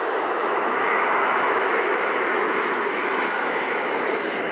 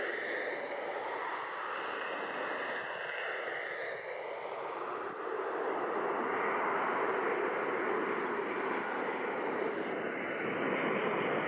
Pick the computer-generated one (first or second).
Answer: first